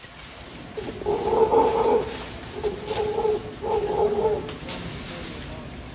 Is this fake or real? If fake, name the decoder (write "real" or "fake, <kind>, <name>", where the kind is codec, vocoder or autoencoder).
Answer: real